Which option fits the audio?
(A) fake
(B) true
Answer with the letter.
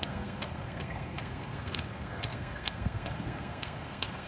A